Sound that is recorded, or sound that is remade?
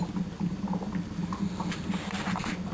remade